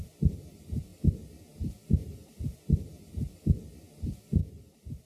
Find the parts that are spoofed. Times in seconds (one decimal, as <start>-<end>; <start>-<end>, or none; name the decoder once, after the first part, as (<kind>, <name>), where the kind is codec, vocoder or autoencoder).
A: 0.0-0.9 (vocoder, BigVGAN v2); 3.1-4.4